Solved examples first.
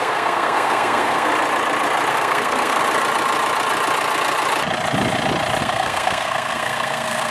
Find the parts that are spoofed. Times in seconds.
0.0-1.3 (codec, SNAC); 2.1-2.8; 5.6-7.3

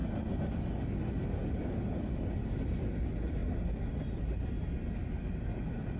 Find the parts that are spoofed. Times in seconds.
none

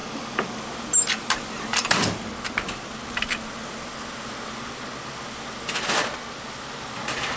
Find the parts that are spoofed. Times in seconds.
0.0-0.6 (codec, DAC)